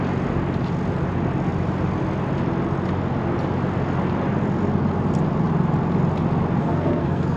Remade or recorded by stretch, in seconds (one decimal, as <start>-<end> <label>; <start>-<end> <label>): 0.0-6.6 recorded; 6.6-7.4 remade